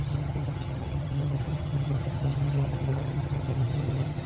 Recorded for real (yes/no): no